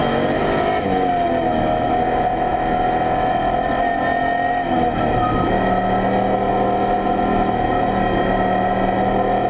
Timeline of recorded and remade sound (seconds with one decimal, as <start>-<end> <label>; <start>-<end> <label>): 0.0-9.5 recorded